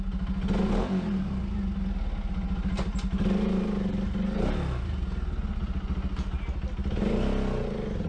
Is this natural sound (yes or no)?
yes